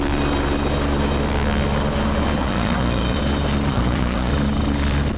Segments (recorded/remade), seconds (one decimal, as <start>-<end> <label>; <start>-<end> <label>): 0.0-2.4 recorded; 2.4-3.2 remade; 3.2-3.7 recorded; 3.7-4.3 remade; 4.3-5.2 recorded